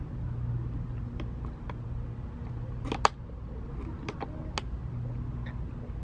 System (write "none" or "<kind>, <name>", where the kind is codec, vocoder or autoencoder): none